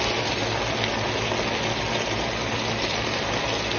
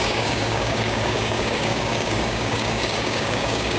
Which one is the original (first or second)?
first